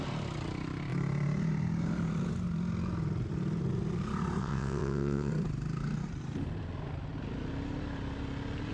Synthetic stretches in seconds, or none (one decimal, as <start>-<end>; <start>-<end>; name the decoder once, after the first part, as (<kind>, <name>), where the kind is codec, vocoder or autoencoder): 4.4-5.3 (vocoder, WaveNeXt)